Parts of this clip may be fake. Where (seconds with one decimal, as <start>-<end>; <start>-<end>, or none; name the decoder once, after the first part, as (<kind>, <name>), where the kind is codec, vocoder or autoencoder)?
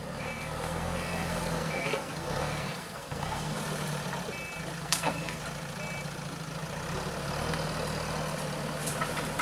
0.0-3.6 (codec, SNAC); 4.8-5.4